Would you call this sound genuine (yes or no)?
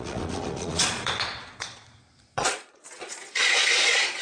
no